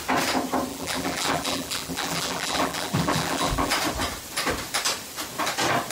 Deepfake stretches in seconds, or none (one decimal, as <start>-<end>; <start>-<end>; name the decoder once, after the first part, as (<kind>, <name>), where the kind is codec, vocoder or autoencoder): 0.7-3.7 (vocoder, BigVGAN v2)

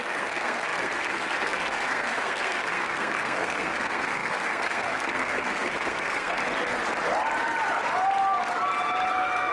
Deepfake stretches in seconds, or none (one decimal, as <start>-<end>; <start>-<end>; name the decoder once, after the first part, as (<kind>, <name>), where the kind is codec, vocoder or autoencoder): 0.0-6.4 (codec, SNAC); 9.1-9.5